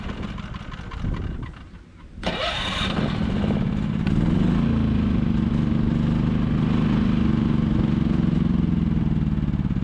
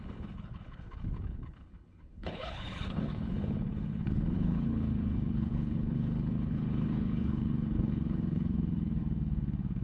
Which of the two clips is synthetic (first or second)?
second